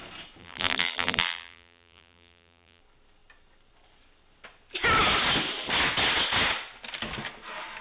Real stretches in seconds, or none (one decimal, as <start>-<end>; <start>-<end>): 0.0-0.4; 2.8-7.8